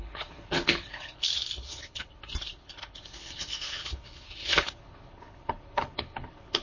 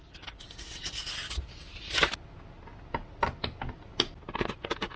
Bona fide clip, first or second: second